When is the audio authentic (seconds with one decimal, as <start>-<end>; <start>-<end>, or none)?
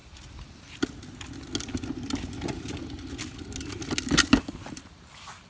0.0-5.5